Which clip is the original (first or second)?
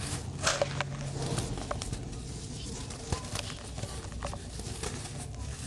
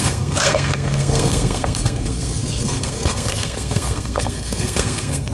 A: first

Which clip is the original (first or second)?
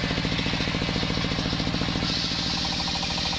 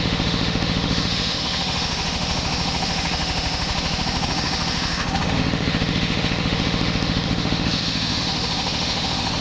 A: first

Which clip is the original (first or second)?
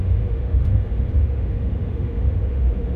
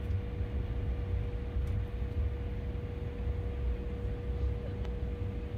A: second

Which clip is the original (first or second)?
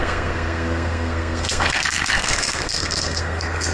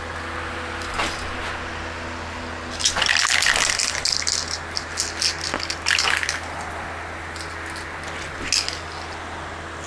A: second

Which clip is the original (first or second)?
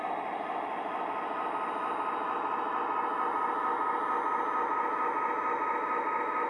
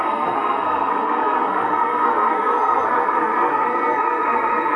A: first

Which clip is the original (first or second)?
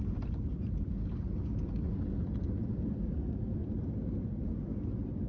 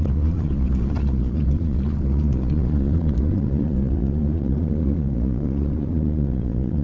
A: first